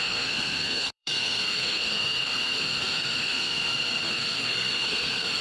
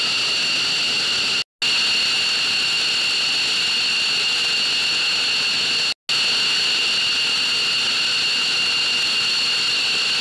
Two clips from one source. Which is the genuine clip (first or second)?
second